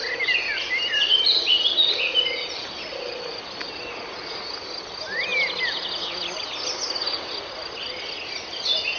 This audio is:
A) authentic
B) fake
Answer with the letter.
A